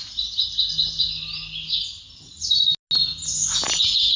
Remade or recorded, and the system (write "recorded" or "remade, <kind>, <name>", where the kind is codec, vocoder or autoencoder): recorded